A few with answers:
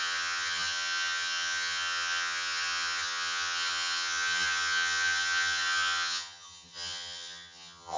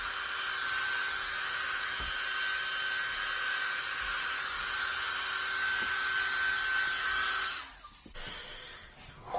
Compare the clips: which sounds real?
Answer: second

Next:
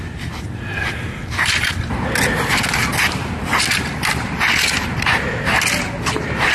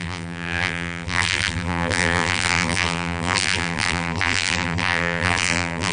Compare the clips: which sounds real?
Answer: first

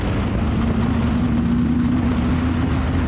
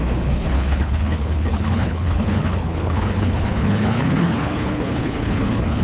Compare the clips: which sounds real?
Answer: first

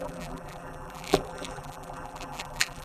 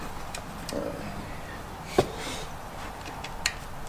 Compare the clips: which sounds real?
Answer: second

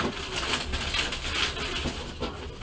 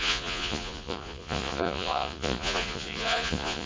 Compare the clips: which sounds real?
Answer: first